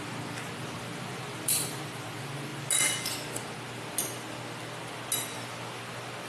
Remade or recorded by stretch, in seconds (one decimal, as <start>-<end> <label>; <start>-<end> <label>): 0.0-6.3 recorded